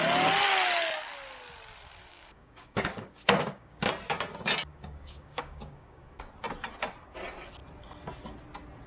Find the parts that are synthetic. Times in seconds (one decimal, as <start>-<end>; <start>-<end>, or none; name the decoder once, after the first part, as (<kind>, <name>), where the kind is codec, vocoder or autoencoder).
2.1-3.9 (codec, DAC); 4.7-6.3